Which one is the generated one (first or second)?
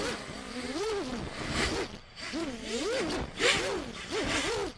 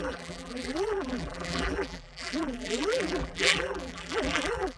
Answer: second